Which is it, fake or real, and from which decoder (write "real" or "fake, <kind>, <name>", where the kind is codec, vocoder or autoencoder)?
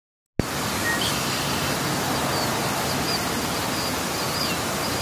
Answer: real